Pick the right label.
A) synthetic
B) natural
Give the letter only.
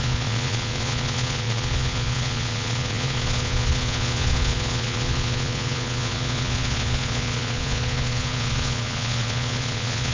A